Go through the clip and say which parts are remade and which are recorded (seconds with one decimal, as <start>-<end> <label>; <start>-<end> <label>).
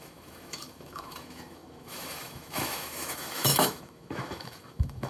0.0-5.1 remade